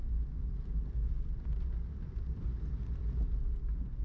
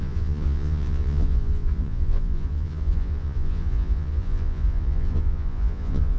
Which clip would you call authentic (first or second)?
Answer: first